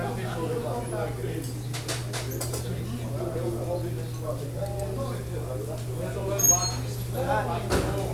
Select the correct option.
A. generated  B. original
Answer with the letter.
B